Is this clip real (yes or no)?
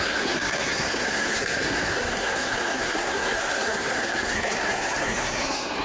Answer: no